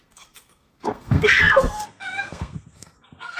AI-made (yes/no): yes